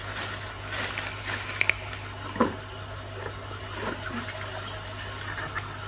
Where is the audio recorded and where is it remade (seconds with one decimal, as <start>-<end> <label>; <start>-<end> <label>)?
0.0-5.9 recorded